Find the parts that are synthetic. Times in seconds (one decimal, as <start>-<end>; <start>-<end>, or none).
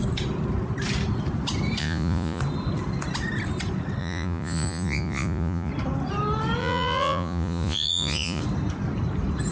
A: 1.8-2.4; 4.0-5.7; 6.6-8.4